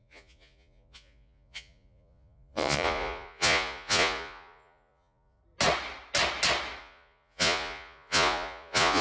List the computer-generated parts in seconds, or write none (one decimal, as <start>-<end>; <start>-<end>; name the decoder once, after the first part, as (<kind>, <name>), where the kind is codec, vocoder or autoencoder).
0.0-5.4 (vocoder, Vocos); 6.8-9.0